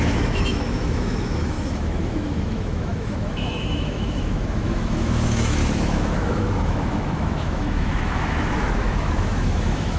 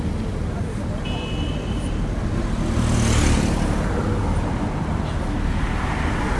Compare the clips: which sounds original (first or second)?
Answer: second